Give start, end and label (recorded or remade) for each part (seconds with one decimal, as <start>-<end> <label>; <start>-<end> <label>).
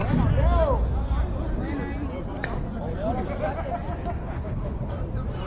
0.0-4.2 recorded; 4.2-4.9 remade; 4.9-5.5 recorded